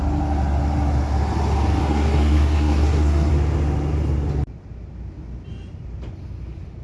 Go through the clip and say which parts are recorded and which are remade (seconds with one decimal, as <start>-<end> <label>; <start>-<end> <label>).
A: 0.0-1.8 recorded; 1.8-3.3 remade; 3.3-6.8 recorded

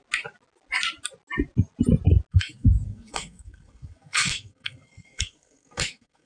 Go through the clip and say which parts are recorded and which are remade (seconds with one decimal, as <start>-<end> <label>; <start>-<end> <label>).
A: 0.0-2.3 recorded; 2.3-6.3 remade

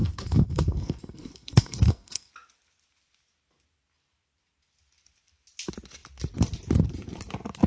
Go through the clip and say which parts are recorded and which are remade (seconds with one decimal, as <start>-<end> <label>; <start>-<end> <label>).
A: 0.0-2.3 remade; 2.3-7.7 recorded

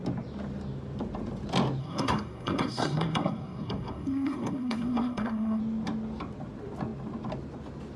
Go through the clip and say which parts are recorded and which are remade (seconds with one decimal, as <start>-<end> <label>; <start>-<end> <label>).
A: 0.0-1.8 recorded; 1.8-5.6 remade; 5.6-8.0 recorded

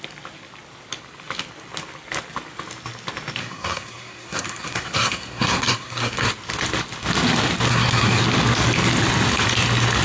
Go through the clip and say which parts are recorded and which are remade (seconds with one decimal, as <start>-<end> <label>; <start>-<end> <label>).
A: 0.0-3.4 recorded; 3.4-6.3 remade; 6.3-7.7 recorded; 7.7-8.2 remade; 8.2-10.0 recorded

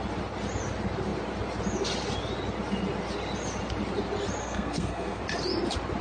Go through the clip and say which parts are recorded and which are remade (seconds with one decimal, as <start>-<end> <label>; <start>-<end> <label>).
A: 0.0-4.4 recorded; 4.4-5.2 remade; 5.2-6.0 recorded

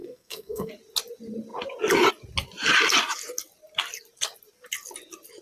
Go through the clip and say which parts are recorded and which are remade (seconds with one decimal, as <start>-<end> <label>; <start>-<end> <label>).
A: 0.0-0.7 remade; 0.7-5.4 recorded

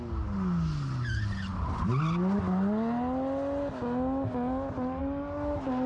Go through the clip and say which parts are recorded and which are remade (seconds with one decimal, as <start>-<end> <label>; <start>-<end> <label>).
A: 0.0-5.9 recorded